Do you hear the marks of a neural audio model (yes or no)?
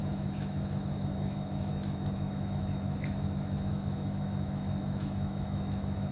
yes